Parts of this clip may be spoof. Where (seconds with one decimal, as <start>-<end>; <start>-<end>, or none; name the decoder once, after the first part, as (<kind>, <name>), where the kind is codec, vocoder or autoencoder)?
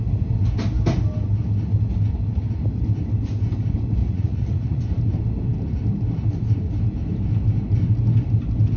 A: 4.0-4.8 (vocoder, Vocos)